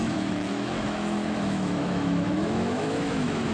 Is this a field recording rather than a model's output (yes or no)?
no